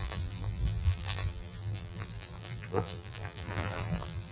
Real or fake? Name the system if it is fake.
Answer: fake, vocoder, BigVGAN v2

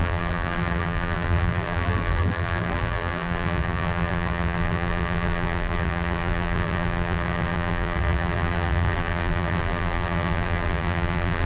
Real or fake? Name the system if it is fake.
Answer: fake, vocoder, BigVGAN v2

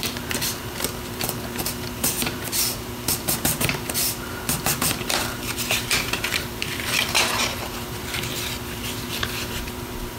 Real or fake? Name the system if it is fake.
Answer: fake, vocoder, BigVGAN v2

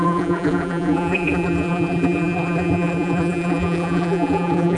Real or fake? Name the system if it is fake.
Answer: fake, vocoder, BigVGAN v2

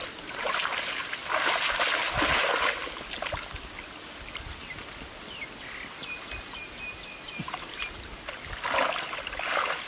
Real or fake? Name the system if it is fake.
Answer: real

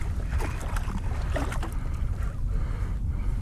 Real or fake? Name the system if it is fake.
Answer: real